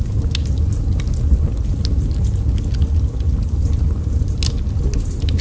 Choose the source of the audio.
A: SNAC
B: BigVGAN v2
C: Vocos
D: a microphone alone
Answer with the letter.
D